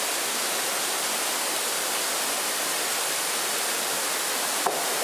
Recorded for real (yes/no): yes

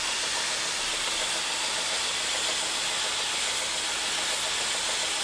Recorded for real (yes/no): yes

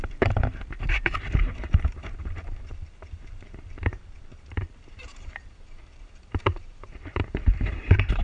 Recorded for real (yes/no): no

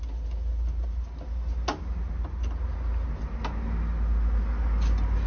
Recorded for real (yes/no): yes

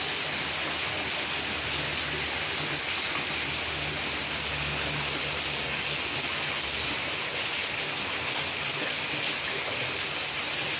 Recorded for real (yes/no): yes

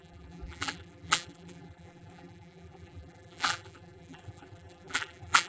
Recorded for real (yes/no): no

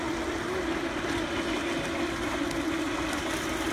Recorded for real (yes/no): yes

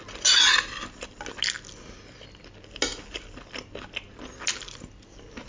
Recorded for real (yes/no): yes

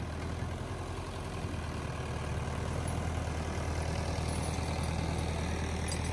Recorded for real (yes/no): yes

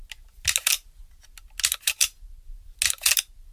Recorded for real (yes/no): yes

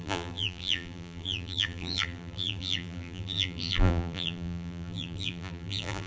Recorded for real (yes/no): no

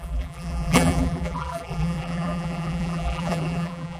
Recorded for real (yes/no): no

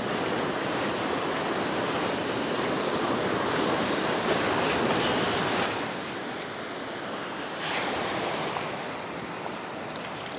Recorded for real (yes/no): no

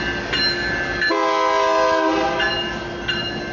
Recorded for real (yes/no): yes